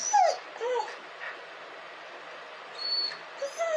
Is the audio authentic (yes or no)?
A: yes